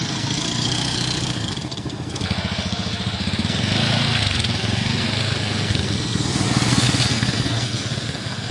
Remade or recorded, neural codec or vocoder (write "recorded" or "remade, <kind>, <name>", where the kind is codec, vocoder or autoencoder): remade, codec, SNAC